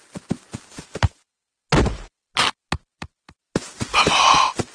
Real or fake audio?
real